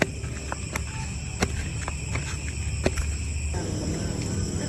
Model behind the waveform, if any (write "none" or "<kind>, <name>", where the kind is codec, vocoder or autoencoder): none